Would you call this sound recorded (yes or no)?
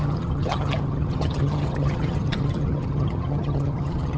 no